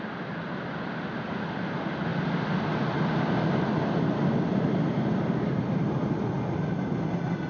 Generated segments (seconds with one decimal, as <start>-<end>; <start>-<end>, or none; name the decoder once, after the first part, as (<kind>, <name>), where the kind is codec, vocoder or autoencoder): none